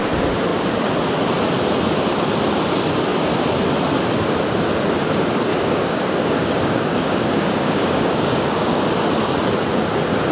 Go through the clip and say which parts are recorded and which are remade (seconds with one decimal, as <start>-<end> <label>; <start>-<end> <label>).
0.0-5.5 recorded; 5.5-8.8 remade; 8.8-10.3 recorded